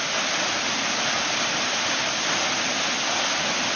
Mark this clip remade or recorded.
recorded